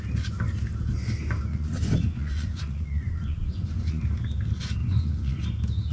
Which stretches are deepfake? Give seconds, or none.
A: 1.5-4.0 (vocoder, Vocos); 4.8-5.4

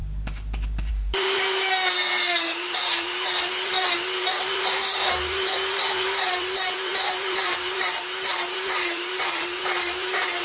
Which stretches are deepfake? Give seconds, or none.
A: 0.9-10.4 (vocoder, BigVGAN v2)

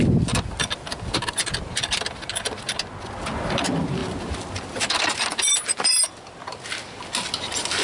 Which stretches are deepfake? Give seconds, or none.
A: none